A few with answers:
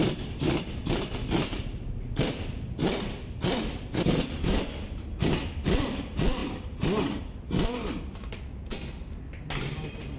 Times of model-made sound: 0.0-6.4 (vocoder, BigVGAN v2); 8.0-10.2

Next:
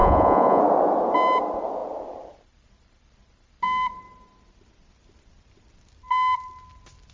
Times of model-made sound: 0.0-0.6 (vocoder, Vocos)

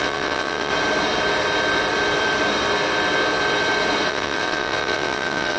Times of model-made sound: 0.0-0.7 (vocoder, WaveNeXt); 4.1-5.6

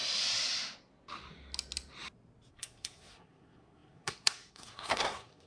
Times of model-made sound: 2.5-5.5 (codec, SNAC)

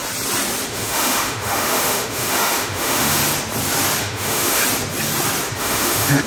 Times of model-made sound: 0.7-3.2 (autoencoder, DAC-VAE); 4.0-4.6; 5.6-6.3

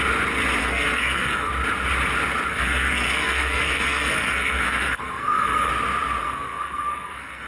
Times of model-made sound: 0.6-1.5 (codec, SNAC); 2.5-5.7; 6.2-7.5

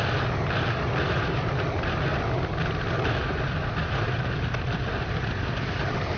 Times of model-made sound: none